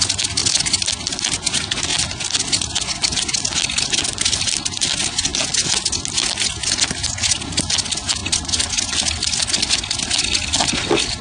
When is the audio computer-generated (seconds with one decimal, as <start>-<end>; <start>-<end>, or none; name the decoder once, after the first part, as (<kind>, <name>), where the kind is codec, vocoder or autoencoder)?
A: none

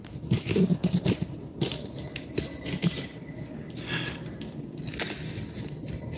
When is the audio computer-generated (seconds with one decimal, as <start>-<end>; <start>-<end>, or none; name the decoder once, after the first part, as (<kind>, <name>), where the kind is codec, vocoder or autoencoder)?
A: none